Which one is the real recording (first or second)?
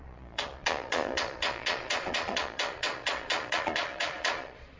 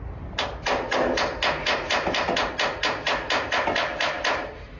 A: second